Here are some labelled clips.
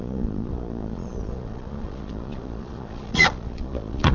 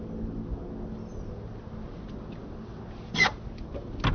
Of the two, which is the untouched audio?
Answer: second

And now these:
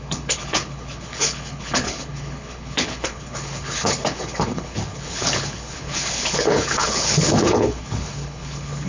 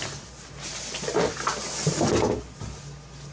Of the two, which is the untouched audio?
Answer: second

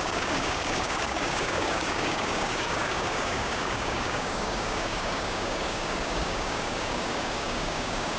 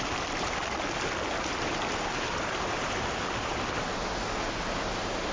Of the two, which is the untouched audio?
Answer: second